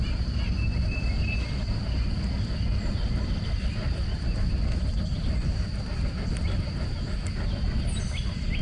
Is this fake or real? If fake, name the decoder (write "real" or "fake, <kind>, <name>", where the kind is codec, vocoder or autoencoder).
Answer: real